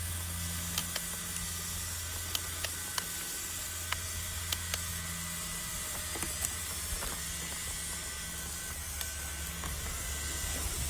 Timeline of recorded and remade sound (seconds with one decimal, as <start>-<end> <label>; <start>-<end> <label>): 0.0-10.9 recorded